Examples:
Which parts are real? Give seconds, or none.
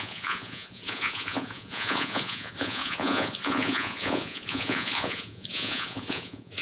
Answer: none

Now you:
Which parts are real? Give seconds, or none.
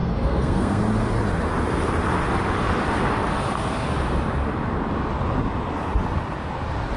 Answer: 0.8-7.0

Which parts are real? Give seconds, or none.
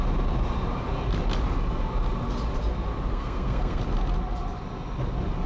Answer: 0.0-3.1; 3.8-5.5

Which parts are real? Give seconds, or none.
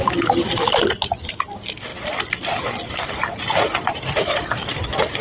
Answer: 0.0-5.2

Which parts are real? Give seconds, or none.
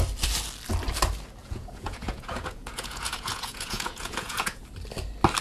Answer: 0.0-1.4; 4.6-5.4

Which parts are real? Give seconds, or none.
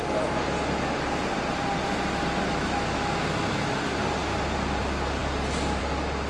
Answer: 0.0-2.4; 3.8-6.3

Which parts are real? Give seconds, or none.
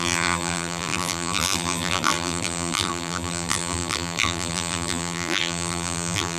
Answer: none